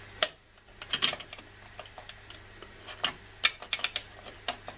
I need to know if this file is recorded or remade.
recorded